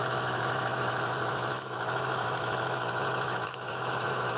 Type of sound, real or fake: fake